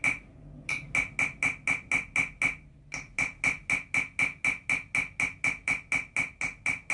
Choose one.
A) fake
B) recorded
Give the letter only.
B